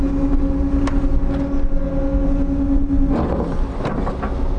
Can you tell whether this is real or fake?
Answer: real